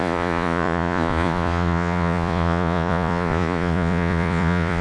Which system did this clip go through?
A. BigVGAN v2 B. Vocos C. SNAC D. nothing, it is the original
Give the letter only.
B